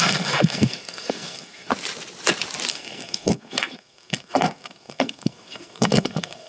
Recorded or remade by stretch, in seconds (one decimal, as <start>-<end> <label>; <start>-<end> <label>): 0.0-1.7 remade; 1.7-2.7 recorded; 2.7-6.5 remade